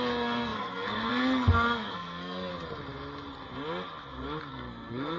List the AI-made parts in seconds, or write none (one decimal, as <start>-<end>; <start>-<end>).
0.0-2.5; 4.5-5.2